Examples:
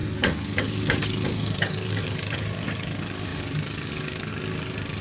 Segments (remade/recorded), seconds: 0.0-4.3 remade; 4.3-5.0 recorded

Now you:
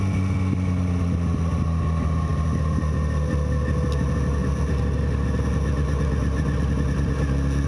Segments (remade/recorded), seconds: 0.0-7.7 recorded

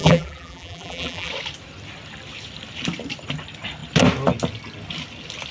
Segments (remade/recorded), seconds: 0.0-1.3 remade; 1.3-5.5 recorded

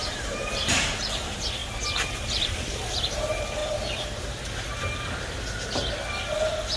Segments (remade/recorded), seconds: 0.0-1.6 remade; 1.6-2.3 recorded; 2.3-4.7 remade; 4.7-6.8 recorded

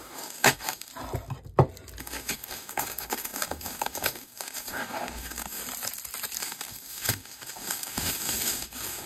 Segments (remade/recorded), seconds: 0.0-0.9 remade; 0.9-2.0 recorded; 2.0-5.6 remade; 5.6-6.4 recorded; 6.4-9.1 remade